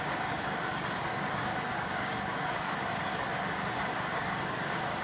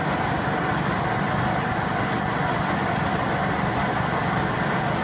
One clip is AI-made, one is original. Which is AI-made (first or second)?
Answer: first